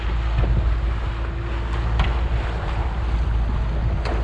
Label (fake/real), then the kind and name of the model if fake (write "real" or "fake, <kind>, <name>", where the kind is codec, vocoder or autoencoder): real